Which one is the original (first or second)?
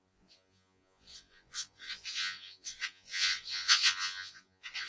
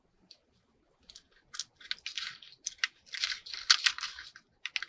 second